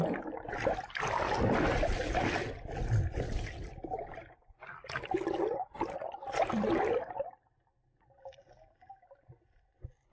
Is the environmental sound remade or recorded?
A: recorded